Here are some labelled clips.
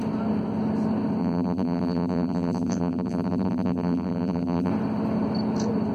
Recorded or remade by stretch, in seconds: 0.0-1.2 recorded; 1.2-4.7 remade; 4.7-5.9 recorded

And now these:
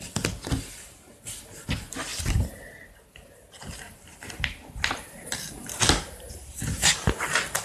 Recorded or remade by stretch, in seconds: 0.0-2.1 recorded; 2.1-6.6 remade; 6.6-7.6 recorded